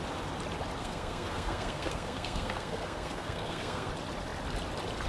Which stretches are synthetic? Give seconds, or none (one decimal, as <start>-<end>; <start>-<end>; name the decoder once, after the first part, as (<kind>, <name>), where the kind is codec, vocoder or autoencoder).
0.8-3.9 (codec, SNAC)